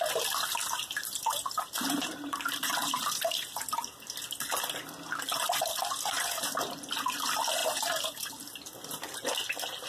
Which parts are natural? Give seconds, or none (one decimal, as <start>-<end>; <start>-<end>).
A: 0.0-0.6; 3.6-7.6; 8.3-9.9